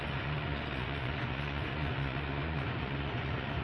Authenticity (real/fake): fake